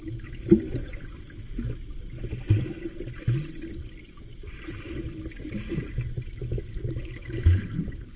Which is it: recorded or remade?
recorded